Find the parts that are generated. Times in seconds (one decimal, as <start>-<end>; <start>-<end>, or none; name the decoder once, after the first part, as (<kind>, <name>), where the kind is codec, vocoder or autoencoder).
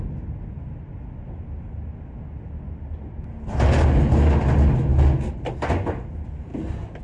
none